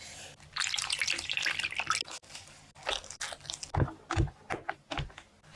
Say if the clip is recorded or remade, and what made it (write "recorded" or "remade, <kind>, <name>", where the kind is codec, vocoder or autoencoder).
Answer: recorded